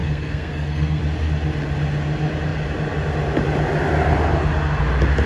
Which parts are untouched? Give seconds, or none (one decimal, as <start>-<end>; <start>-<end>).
1.0-5.3